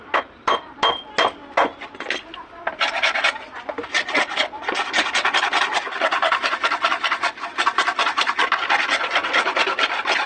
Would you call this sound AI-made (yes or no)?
no